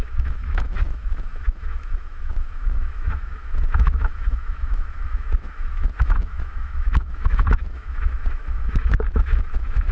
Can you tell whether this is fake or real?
fake